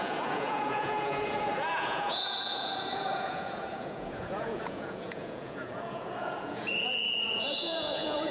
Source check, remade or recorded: remade